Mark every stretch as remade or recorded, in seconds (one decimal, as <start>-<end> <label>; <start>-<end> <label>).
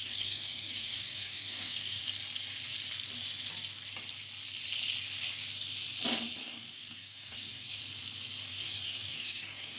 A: 0.0-2.0 remade; 2.0-6.4 recorded; 6.4-7.8 remade; 7.8-8.5 recorded; 8.5-9.8 remade